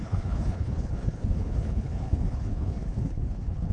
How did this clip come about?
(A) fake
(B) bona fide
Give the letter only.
A